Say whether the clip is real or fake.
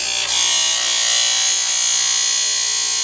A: real